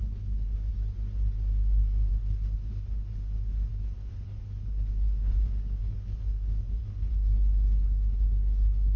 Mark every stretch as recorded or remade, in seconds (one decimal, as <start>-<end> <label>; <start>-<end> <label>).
0.0-0.7 remade; 0.7-2.1 recorded; 2.1-9.0 remade